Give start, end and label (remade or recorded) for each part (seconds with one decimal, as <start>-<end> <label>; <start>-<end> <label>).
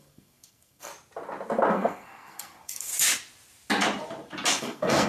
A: 0.0-0.9 remade; 0.9-1.7 recorded; 1.7-2.9 remade; 2.9-4.5 recorded; 4.5-5.1 remade